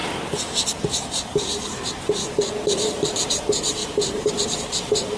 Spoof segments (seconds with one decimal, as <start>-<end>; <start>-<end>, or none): 0.9-5.2